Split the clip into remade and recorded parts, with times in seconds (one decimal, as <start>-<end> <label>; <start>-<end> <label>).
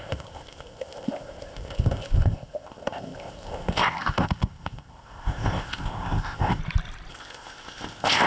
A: 0.0-6.6 remade; 6.6-7.1 recorded; 7.1-8.3 remade